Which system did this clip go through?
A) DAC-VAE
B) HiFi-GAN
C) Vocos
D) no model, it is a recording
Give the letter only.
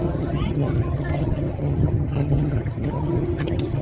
B